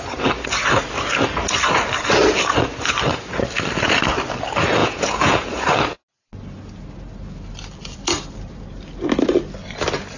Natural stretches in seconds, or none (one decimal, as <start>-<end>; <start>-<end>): 0.0-4.8; 5.6-10.2